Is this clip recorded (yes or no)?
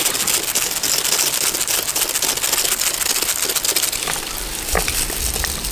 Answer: yes